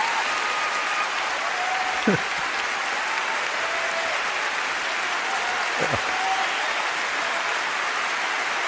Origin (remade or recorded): recorded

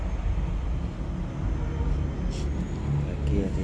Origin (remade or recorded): recorded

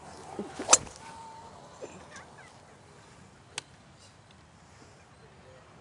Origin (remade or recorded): recorded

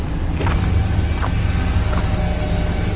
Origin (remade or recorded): recorded